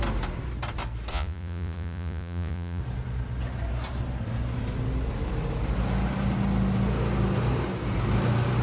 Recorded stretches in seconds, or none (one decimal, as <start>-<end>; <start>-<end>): 0.0-1.1; 2.8-8.6